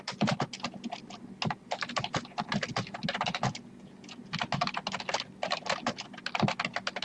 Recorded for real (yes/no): yes